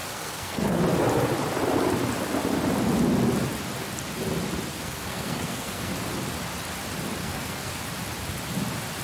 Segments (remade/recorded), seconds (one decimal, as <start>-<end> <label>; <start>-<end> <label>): 0.0-0.8 remade; 0.8-4.7 recorded; 4.7-5.9 remade; 5.9-7.2 recorded; 7.2-7.8 remade; 7.8-9.0 recorded